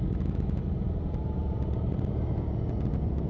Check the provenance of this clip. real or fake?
real